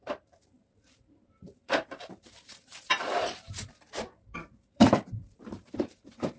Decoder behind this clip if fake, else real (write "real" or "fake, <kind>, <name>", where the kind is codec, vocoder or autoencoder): fake, vocoder, BigVGAN v2